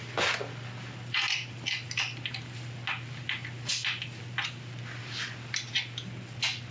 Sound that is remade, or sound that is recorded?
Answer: recorded